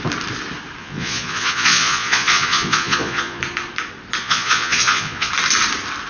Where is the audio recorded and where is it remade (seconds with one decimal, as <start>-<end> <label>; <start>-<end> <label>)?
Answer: 0.0-0.8 recorded; 0.8-3.4 remade; 3.4-4.2 recorded; 4.2-5.3 remade; 5.3-6.1 recorded